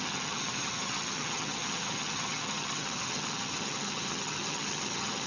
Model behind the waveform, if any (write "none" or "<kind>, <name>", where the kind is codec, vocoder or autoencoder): vocoder, HiFi-GAN